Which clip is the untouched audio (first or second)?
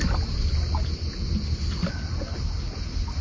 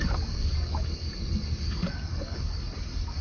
first